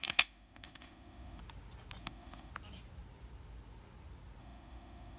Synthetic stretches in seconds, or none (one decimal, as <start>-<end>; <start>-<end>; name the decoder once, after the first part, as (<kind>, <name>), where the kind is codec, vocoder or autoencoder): 0.0-1.4 (autoencoder, DAC-VAE); 2.0-2.5; 4.4-5.2